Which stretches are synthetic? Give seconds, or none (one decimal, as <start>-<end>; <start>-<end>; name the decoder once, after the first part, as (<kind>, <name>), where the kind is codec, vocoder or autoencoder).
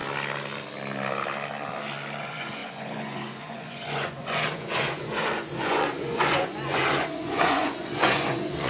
2.2-8.7 (vocoder, Vocos)